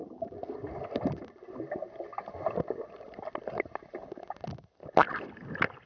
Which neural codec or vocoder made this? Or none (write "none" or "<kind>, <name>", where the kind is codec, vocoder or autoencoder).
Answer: none